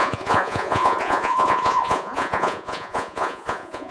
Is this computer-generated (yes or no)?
yes